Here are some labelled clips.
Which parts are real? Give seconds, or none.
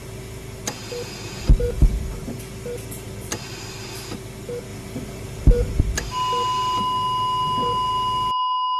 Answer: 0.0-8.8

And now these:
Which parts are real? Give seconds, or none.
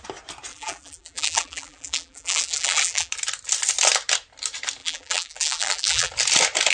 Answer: 0.0-0.5; 3.1-4.8; 6.1-6.7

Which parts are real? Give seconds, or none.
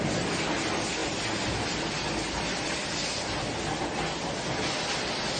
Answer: 0.0-5.4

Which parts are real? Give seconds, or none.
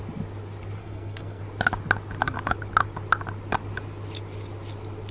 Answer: 0.0-0.8; 1.4-5.1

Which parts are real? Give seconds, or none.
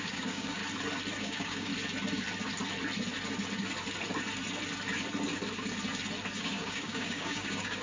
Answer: 0.6-1.2; 1.7-6.4